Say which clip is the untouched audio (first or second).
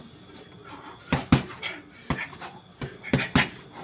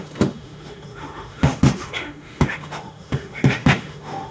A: first